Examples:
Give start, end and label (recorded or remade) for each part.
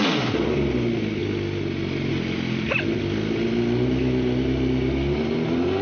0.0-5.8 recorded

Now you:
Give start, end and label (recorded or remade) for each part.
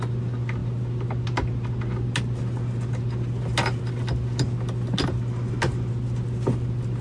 0.0-7.0 recorded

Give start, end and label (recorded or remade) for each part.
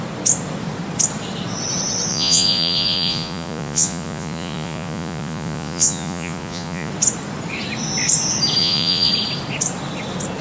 0.0-2.1 recorded; 2.1-6.9 remade; 6.9-8.6 recorded; 8.6-9.1 remade; 9.1-10.4 recorded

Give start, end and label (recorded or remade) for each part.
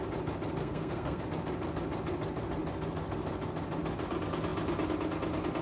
0.0-0.6 recorded; 0.6-1.2 remade; 1.2-5.6 recorded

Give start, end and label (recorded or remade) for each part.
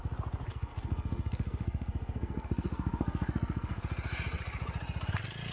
0.0-0.5 recorded; 0.5-3.8 remade; 3.8-5.5 recorded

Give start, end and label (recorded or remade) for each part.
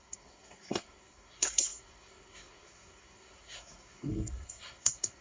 0.0-5.2 remade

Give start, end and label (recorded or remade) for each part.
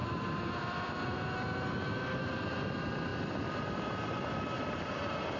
0.0-0.9 remade; 0.9-5.4 recorded